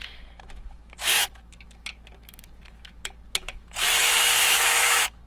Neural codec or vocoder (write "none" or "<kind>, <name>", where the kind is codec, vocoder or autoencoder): autoencoder, DAC-VAE